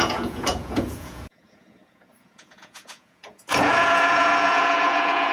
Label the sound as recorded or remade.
remade